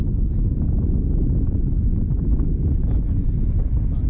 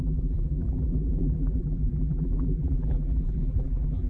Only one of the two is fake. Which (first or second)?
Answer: second